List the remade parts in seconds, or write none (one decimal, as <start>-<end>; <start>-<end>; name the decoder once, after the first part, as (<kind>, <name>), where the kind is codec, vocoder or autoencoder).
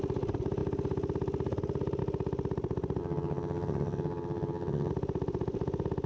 3.0-4.9 (vocoder, HiFi-GAN)